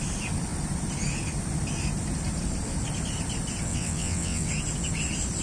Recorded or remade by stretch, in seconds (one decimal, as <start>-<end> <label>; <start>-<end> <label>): 0.0-3.7 recorded; 3.7-4.5 remade; 4.5-5.4 recorded